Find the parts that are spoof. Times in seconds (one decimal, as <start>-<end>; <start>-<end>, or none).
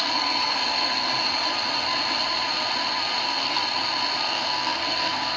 0.0-1.1; 3.2-3.6; 4.3-5.4